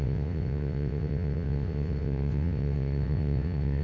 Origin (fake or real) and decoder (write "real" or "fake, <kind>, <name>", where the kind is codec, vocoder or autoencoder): fake, vocoder, WaveNeXt